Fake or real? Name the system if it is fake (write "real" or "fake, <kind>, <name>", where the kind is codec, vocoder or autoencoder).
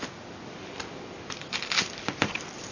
real